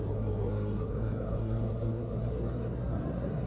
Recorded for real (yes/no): no